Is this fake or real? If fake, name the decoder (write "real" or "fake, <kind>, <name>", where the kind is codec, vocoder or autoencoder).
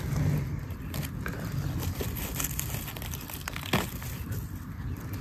real